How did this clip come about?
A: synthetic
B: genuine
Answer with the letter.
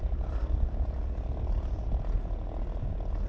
B